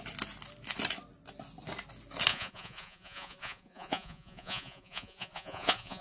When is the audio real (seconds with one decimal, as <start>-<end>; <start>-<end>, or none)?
0.0-2.3